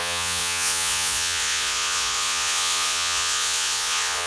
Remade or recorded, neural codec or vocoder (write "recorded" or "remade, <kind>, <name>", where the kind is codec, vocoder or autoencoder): remade, vocoder, Vocos